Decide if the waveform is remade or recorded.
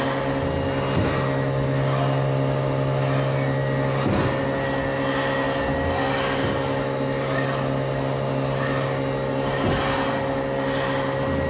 recorded